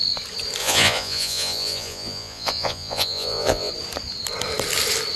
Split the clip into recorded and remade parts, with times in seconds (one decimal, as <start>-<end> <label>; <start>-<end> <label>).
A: 0.0-0.6 recorded; 0.6-3.7 remade; 3.7-5.2 recorded